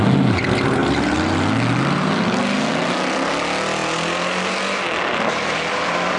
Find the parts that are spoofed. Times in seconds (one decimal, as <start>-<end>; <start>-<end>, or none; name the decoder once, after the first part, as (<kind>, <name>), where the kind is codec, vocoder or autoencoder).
none